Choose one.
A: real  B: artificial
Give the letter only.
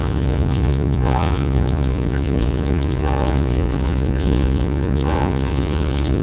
B